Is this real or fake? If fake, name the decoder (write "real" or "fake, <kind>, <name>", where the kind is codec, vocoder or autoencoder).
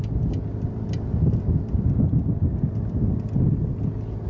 real